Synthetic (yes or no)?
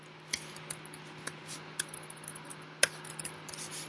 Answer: no